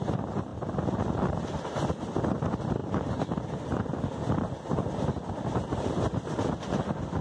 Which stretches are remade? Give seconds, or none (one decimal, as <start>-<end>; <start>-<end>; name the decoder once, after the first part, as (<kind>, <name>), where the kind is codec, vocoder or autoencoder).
none